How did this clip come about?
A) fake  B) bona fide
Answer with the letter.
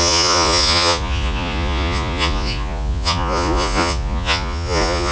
A